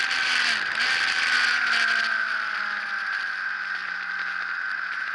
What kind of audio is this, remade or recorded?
recorded